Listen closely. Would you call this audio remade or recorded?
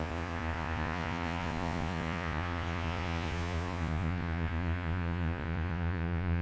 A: remade